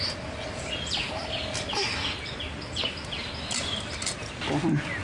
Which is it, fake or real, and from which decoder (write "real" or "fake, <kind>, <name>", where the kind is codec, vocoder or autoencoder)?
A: real